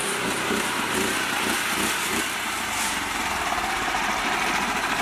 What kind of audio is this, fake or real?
fake